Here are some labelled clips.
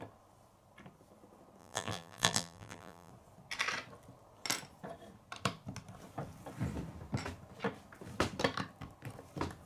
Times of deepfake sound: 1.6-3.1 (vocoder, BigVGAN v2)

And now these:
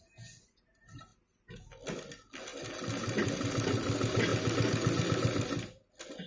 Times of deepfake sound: none